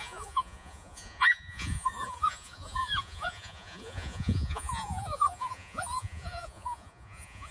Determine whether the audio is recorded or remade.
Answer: remade